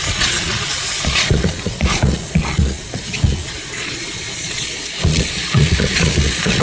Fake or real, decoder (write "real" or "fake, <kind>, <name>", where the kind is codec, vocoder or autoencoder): fake, vocoder, Vocos